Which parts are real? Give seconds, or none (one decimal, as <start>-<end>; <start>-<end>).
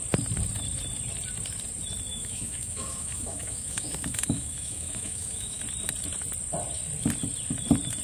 0.0-2.1; 5.6-8.0